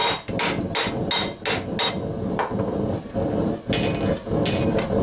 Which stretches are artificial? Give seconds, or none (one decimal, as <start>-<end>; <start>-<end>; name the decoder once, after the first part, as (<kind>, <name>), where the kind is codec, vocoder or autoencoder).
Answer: none